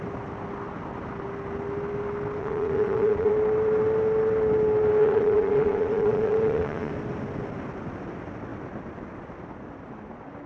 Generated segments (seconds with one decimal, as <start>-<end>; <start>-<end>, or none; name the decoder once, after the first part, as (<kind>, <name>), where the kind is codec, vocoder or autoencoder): 2.4-3.3 (vocoder, Vocos); 5.0-6.9